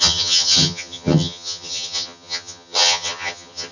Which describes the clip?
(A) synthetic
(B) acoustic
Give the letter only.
A